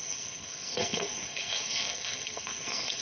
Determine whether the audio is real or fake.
fake